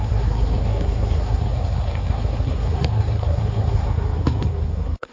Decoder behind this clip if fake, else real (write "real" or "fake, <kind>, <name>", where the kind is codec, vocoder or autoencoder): fake, codec, SNAC